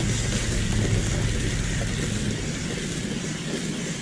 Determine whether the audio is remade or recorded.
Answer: recorded